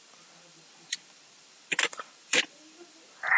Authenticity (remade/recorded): remade